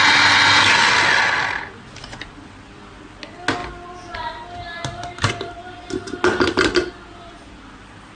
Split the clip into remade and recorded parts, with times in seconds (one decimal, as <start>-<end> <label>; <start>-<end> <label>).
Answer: 0.0-8.1 recorded